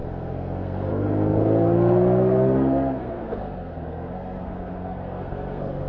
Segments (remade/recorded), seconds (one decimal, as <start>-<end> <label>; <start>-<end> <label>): 0.0-5.9 remade